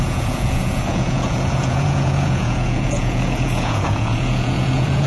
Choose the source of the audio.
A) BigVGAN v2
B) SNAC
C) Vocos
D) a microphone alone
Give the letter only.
C